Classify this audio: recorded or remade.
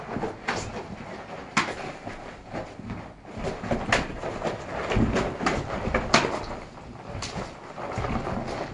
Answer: recorded